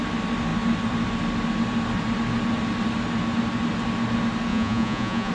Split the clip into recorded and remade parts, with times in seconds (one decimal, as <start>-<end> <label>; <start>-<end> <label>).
0.0-4.5 recorded; 4.5-5.3 remade